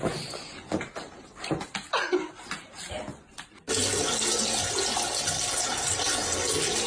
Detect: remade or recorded recorded